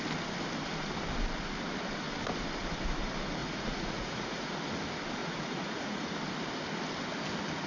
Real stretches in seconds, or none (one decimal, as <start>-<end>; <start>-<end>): 0.0-3.4; 4.5-5.2; 6.2-7.7